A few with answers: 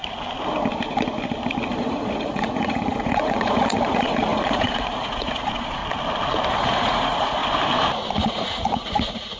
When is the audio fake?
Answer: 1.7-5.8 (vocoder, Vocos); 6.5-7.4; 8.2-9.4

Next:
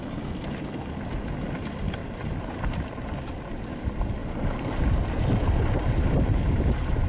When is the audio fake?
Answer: 2.0-3.8 (vocoder, BigVGAN v2); 4.2-7.1

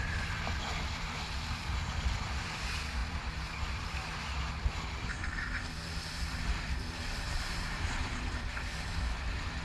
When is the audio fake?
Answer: 0.0-9.6 (vocoder, BigVGAN v2)

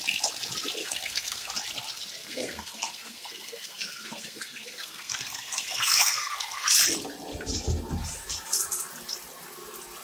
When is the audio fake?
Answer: 0.8-1.5 (codec, SNAC); 2.2-6.7

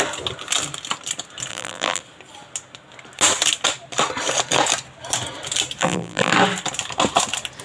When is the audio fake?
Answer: 1.5-2.0 (vocoder, BigVGAN v2); 5.8-6.3